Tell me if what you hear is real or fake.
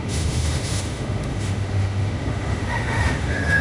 fake